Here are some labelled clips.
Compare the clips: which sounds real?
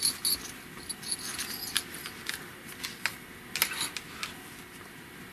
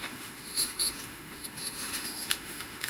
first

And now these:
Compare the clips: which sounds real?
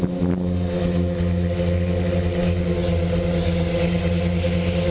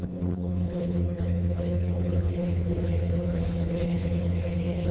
first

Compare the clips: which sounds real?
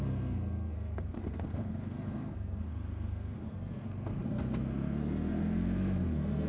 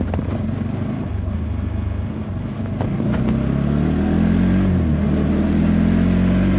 second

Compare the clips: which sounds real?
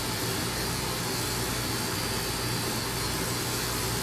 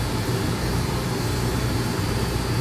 first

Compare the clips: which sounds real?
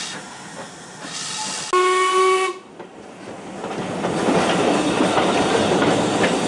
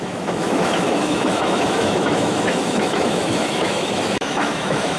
first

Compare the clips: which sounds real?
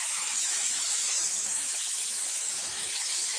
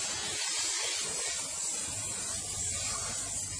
second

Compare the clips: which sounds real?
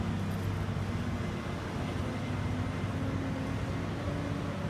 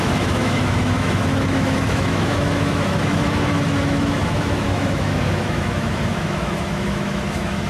first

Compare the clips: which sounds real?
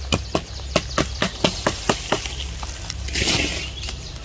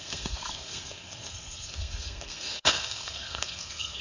first